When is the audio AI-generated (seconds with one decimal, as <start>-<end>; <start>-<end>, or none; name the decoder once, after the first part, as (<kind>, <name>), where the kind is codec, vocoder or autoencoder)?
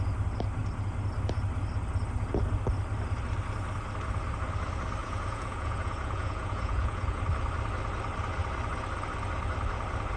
5.0-7.2 (vocoder, Vocos)